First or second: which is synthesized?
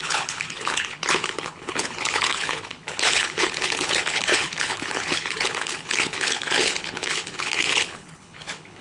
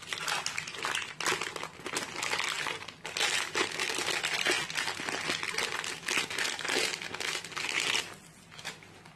first